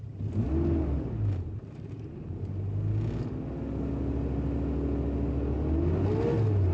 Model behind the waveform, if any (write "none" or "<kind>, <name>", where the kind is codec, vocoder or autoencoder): none